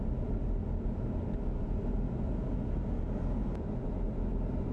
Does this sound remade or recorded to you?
recorded